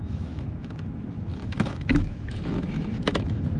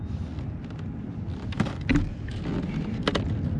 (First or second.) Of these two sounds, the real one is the second